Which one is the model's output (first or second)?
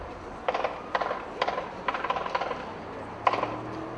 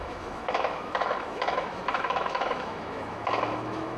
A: second